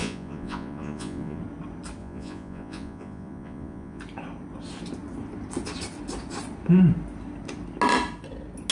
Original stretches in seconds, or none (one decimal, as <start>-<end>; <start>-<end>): 1.4-2.0; 4.0-8.7